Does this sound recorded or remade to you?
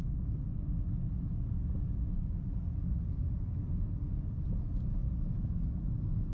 recorded